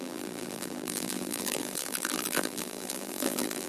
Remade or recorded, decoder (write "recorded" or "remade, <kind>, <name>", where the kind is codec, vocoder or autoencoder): remade, vocoder, BigVGAN v2